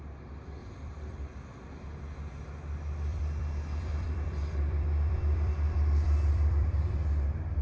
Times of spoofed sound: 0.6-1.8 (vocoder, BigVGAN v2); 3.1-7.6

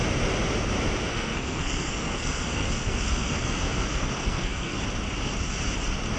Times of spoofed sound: 1.1-4.8 (codec, SNAC)

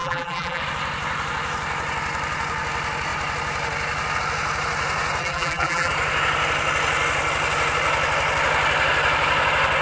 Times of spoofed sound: 0.0-0.6 (vocoder, BigVGAN v2); 5.2-5.9

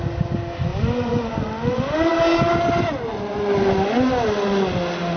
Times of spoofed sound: none